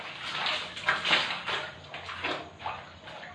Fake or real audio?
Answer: real